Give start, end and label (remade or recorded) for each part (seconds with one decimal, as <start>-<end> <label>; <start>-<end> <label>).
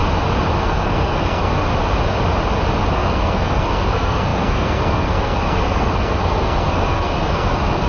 0.0-0.6 recorded; 0.6-1.7 remade; 1.7-2.9 recorded; 2.9-7.9 remade